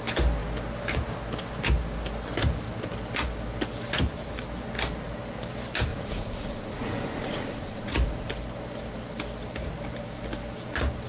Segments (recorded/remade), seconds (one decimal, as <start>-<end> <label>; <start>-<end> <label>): 0.0-5.9 recorded; 5.9-8.3 remade; 8.3-11.1 recorded